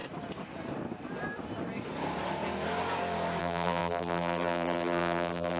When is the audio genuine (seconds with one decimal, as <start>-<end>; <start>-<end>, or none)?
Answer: 0.0-3.4